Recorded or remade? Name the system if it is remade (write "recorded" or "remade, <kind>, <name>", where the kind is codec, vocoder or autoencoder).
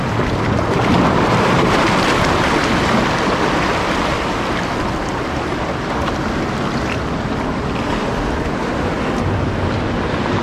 recorded